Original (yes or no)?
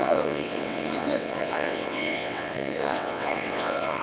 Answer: no